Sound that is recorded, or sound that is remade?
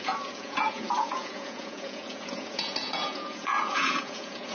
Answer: remade